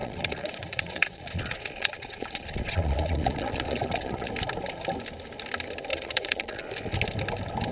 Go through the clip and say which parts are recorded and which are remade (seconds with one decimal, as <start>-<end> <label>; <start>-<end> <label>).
0.0-4.3 remade; 4.3-5.9 recorded; 5.9-6.6 remade; 6.6-7.7 recorded